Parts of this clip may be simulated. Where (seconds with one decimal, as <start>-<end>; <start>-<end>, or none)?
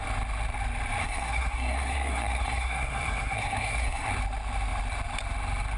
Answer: 1.0-4.1